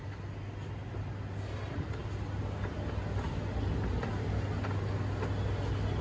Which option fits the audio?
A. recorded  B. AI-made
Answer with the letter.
A